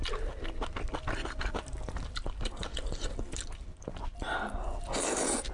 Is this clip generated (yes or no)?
no